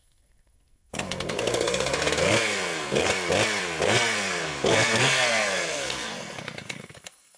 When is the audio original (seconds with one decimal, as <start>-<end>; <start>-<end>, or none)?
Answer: 3.1-3.6